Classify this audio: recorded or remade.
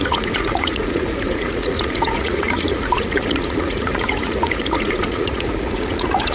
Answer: remade